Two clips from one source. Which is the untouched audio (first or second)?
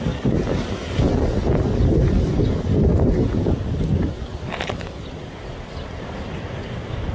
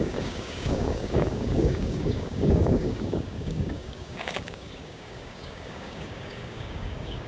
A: first